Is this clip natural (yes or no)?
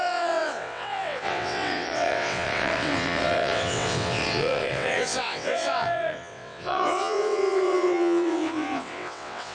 no